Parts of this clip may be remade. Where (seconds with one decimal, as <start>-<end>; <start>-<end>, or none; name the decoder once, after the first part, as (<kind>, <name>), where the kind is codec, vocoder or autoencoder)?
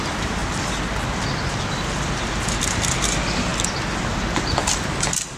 none